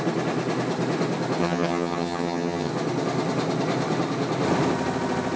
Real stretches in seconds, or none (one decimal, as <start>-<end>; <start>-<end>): 0.0-1.4; 2.7-5.4